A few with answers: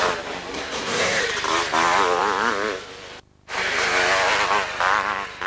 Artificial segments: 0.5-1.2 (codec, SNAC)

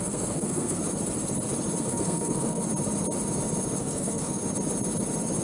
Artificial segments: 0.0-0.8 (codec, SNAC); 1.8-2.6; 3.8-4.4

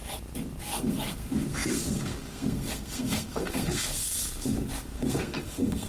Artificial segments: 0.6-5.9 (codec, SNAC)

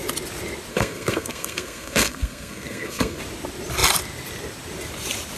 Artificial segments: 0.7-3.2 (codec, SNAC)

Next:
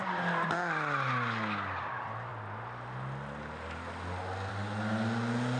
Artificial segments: none

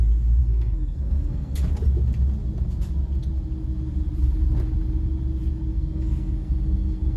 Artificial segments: 0.4-1.6 (codec, SNAC); 5.7-7.2

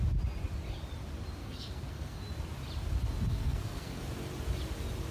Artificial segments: 1.4-2.2 (codec, SNAC); 3.3-4.0

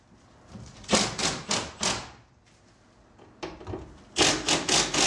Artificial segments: none